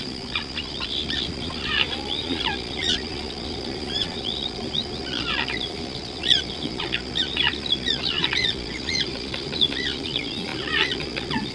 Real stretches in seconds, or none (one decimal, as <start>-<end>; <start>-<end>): none